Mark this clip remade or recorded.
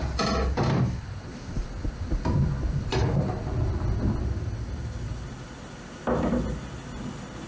recorded